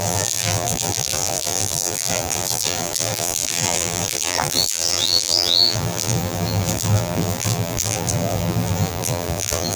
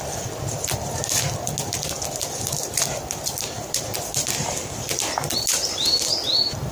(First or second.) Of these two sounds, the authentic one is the second